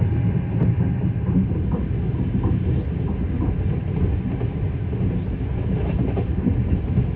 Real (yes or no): yes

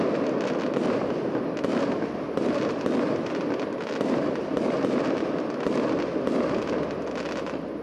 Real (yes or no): yes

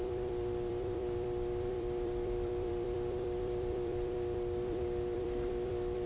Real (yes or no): no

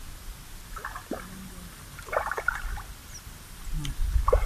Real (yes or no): yes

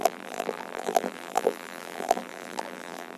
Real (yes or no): no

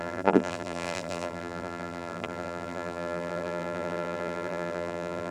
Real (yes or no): no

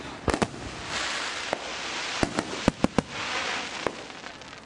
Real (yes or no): yes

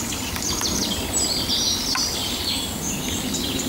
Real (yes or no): yes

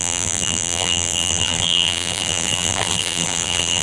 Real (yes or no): no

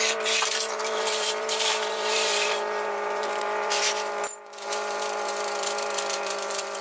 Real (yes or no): no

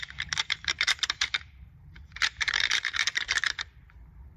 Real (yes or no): no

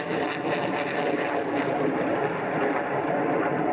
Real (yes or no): yes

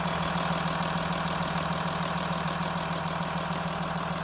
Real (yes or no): no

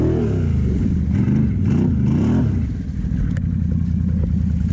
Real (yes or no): yes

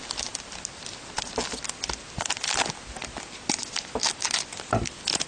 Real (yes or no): yes